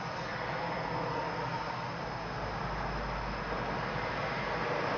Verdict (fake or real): real